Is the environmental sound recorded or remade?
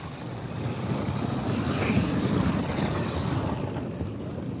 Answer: recorded